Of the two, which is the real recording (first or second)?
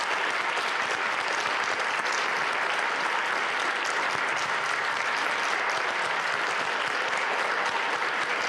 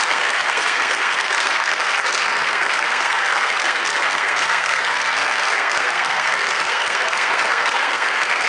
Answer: first